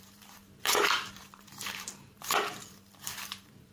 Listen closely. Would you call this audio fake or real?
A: fake